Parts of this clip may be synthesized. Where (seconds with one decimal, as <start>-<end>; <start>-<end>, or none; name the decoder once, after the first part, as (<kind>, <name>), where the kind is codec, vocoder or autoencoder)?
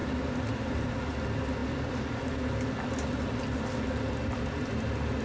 none